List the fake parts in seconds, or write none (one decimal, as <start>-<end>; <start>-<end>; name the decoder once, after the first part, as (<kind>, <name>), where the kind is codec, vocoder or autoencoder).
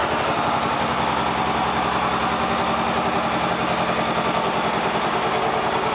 none